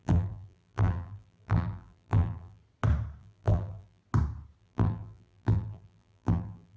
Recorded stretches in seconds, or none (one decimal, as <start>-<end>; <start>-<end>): 2.6-3.2; 4.0-4.6